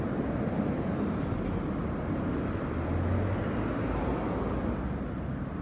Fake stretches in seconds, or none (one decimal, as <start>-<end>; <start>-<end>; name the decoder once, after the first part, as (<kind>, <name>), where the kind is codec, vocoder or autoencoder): 3.4-4.6 (vocoder, BigVGAN v2)